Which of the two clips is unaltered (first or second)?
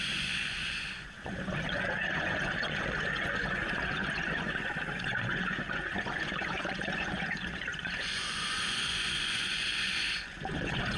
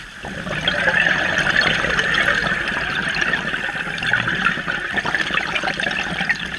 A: second